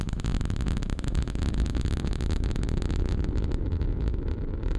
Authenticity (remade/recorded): remade